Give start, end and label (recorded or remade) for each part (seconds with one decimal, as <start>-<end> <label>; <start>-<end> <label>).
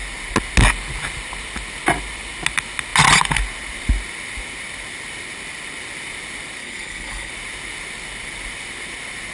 0.0-6.6 recorded; 6.6-7.3 remade; 7.3-9.3 recorded